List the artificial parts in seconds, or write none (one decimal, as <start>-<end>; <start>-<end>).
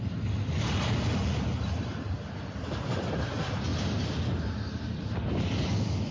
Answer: none